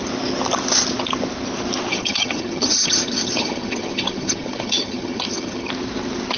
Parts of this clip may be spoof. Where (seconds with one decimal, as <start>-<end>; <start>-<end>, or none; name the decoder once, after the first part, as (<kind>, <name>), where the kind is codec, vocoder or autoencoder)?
1.9-5.7 (vocoder, HiFi-GAN)